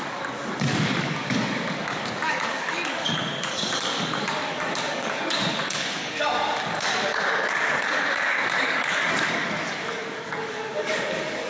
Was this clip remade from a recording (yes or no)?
yes